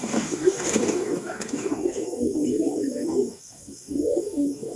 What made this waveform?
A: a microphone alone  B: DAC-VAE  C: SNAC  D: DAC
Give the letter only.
D